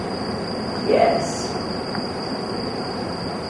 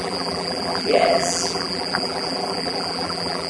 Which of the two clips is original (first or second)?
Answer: first